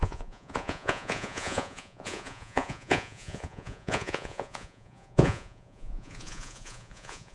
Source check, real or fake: fake